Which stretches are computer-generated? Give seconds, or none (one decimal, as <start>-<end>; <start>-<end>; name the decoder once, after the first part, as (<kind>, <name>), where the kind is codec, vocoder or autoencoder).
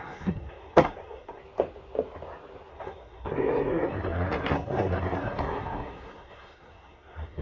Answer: 0.0-1.4 (codec, SNAC); 2.7-7.4